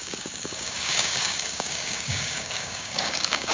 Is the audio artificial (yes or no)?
yes